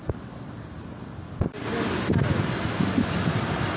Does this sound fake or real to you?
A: fake